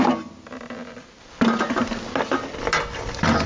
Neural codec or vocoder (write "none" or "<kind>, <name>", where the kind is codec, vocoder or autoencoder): none